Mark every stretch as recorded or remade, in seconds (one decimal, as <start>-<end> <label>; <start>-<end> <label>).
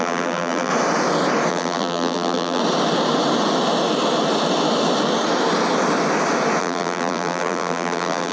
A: 0.0-0.7 remade; 0.7-1.5 recorded; 1.5-2.6 remade; 2.6-6.6 recorded; 6.6-8.3 remade